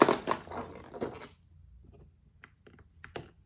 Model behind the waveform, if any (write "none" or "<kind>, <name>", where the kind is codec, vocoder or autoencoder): none